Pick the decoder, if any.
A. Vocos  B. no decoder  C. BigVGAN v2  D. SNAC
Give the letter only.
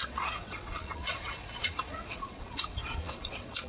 A